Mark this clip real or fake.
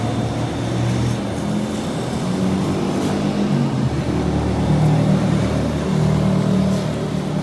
real